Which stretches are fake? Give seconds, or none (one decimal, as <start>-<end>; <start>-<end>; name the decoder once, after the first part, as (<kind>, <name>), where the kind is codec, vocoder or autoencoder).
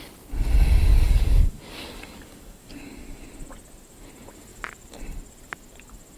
0.9-3.3 (codec, DAC)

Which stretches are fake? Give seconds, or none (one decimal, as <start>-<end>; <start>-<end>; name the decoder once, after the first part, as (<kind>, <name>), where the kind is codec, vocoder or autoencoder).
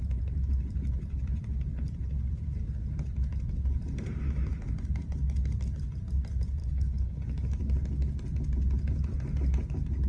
6.6-7.2 (codec, HILCodec)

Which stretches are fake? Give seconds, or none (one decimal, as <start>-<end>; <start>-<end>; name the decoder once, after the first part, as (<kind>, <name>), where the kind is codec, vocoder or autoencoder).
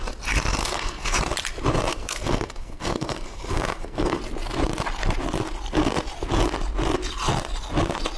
0.6-1.2 (codec, SNAC); 1.9-4.2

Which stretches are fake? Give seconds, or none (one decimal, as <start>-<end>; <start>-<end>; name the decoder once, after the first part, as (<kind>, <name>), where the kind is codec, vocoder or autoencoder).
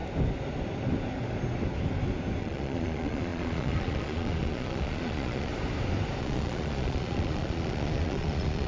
2.4-5.5 (vocoder, Vocos); 6.2-8.7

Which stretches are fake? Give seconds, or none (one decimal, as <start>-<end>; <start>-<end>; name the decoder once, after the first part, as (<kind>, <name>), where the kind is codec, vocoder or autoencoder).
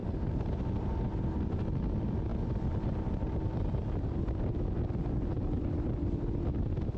0.0-0.9 (vocoder, BigVGAN v2)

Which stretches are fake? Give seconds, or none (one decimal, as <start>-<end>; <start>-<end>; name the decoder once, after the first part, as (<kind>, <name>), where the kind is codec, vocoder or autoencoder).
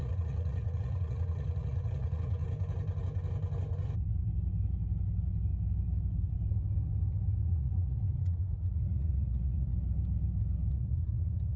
0.0-2.4 (vocoder, Vocos); 7.4-9.7; 10.7-11.6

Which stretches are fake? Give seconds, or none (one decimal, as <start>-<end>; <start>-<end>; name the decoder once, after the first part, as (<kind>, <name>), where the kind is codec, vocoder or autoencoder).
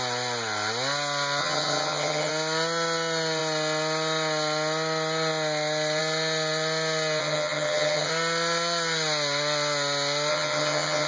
1.4-2.3 (vocoder, HiFi-GAN); 7.2-8.1; 10.3-11.1